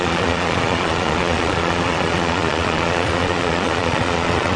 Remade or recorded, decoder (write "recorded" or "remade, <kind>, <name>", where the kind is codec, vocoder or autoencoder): remade, vocoder, Vocos